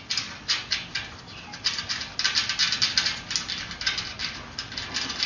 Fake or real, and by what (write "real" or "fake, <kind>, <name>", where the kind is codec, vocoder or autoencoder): real